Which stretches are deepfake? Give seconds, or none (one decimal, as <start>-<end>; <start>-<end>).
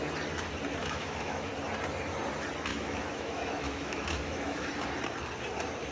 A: 0.8-1.5; 2.7-4.7